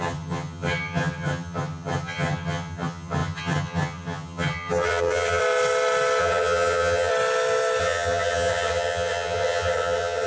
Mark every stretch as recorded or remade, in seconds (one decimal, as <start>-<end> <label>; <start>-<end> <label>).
0.0-5.4 remade; 5.4-6.2 recorded; 6.2-7.1 remade; 7.1-7.8 recorded; 7.8-10.3 remade